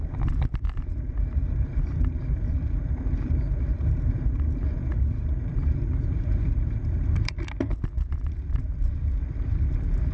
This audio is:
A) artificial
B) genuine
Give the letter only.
A